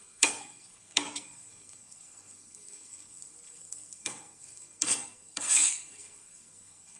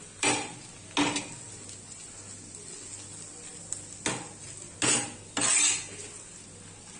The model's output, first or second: first